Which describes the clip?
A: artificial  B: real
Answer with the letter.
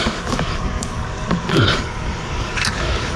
A